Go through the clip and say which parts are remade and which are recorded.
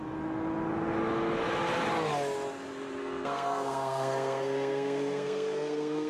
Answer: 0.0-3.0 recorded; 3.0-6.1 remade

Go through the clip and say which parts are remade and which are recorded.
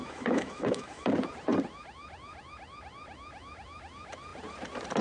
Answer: 0.0-1.1 remade; 1.1-5.0 recorded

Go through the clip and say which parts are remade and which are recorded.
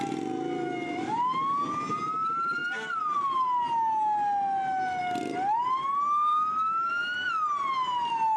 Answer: 0.0-6.3 recorded; 6.3-6.9 remade; 6.9-8.4 recorded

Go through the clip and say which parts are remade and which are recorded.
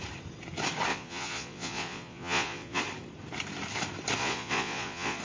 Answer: 0.0-0.9 recorded; 0.9-2.8 remade; 2.8-4.2 recorded; 4.2-5.2 remade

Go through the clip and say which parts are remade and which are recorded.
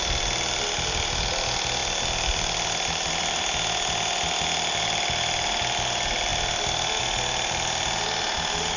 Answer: 0.0-8.8 recorded